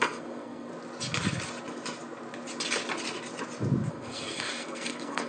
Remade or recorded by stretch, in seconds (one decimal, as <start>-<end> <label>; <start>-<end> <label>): 0.0-0.7 remade; 0.7-3.9 recorded; 3.9-5.3 remade